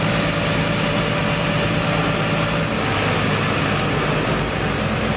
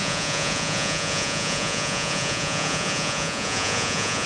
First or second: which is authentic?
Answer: first